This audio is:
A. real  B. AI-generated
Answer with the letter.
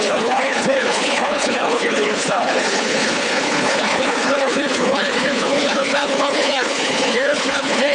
B